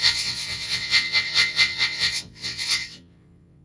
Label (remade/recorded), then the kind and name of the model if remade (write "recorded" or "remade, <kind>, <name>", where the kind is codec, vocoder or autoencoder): remade, vocoder, WaveNeXt